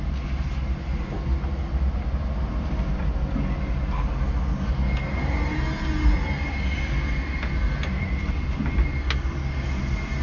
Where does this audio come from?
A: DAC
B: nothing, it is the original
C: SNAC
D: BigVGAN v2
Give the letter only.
B